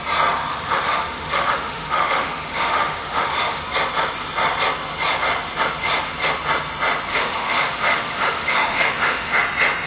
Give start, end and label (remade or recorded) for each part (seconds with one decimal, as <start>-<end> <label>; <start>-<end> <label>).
0.0-0.5 recorded; 0.5-3.6 remade; 3.6-7.1 recorded; 7.1-9.4 remade; 9.4-9.9 recorded